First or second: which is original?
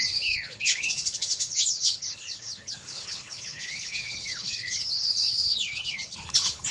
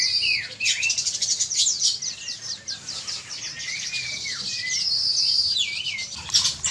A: second